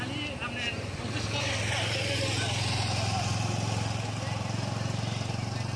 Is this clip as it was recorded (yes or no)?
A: yes